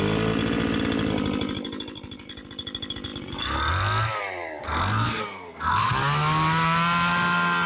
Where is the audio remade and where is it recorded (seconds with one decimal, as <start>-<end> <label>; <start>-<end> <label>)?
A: 0.0-4.6 recorded; 4.6-5.9 remade; 5.9-7.7 recorded